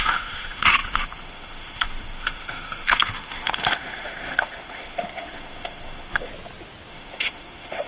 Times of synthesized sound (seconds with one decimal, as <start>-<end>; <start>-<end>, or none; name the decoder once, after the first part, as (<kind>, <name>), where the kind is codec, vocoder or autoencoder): 0.0-6.3 (autoencoder, DAC-VAE); 6.9-7.9